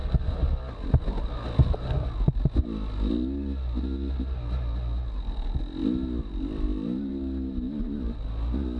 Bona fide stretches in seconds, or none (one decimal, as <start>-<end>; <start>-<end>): 0.0-8.8